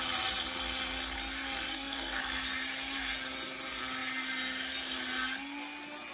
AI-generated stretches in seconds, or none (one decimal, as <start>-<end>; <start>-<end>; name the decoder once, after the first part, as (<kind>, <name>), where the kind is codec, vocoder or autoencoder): 1.7-2.2 (codec, SNAC)